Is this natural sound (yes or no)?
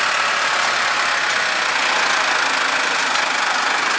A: yes